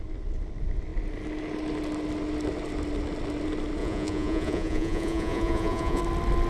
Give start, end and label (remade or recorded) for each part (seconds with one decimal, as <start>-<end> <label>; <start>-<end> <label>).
0.0-3.8 recorded; 3.8-6.0 remade; 6.0-6.5 recorded